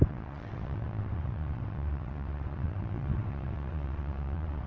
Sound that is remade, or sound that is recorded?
remade